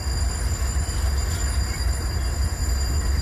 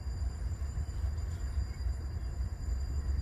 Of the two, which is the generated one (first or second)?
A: second